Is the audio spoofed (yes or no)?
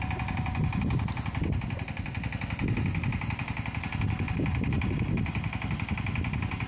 no